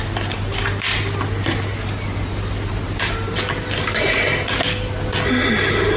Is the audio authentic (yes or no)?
yes